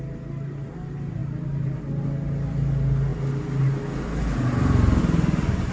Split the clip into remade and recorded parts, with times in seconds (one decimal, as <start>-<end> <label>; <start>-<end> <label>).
0.0-1.2 recorded; 1.2-1.8 remade; 1.8-5.7 recorded